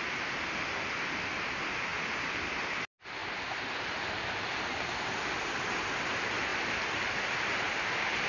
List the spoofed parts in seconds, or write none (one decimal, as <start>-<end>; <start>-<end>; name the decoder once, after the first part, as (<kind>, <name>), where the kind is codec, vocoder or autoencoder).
none